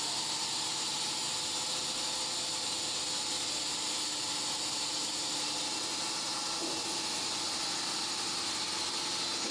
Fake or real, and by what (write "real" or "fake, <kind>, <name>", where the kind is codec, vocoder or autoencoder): real